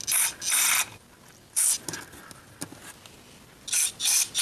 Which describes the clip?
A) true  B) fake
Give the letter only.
A